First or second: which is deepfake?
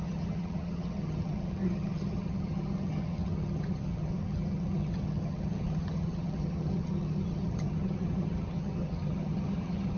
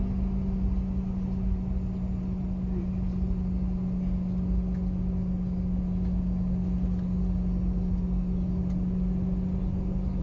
first